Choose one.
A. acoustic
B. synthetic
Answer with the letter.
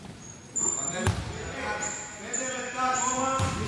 A